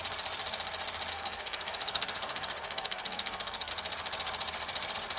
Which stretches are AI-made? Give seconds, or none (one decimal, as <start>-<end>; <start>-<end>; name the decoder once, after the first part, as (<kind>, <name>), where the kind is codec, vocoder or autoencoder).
1.1-3.7 (codec, SNAC)